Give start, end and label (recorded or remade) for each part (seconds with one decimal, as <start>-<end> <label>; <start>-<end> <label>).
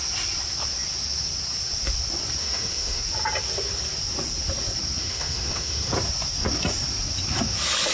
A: 0.0-2.4 recorded; 2.4-3.0 remade; 3.0-5.0 recorded; 5.0-5.9 remade; 5.9-7.9 recorded